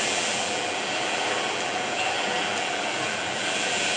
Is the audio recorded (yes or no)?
no